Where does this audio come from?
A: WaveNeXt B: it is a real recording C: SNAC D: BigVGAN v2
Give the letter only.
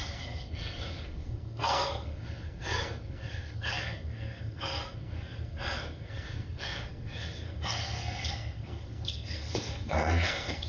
C